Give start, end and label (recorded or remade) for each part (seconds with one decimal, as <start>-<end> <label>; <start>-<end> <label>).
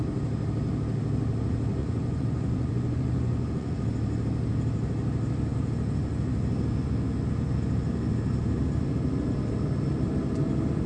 0.0-1.8 recorded; 1.8-3.8 remade; 3.8-10.9 recorded